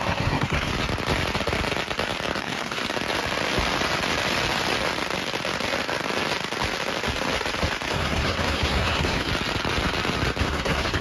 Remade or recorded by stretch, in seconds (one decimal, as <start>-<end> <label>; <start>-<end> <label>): 0.0-0.7 remade; 0.7-2.4 recorded; 2.4-2.8 remade; 2.8-7.9 recorded; 7.9-9.3 remade; 9.3-10.4 recorded; 10.4-11.0 remade